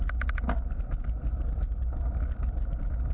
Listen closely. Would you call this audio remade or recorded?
recorded